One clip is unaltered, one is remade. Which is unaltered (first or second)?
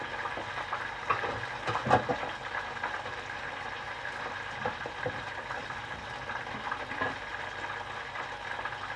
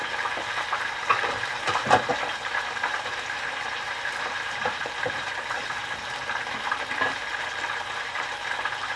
first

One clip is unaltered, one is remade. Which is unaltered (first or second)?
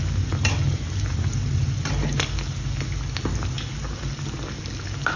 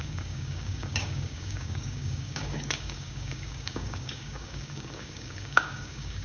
first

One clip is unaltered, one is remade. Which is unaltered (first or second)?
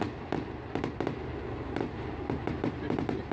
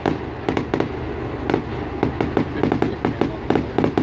second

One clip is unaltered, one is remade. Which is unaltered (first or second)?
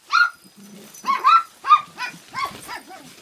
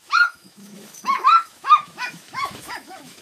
first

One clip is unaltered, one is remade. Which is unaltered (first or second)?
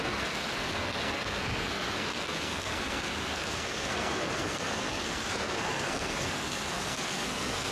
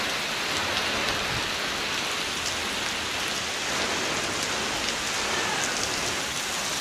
second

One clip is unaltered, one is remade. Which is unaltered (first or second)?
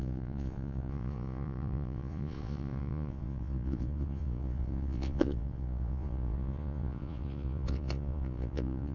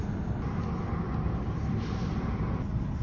second